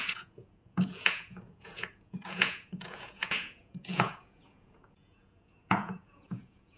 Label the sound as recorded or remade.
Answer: remade